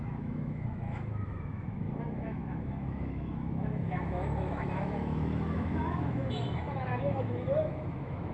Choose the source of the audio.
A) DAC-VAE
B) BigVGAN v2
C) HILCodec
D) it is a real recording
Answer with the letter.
A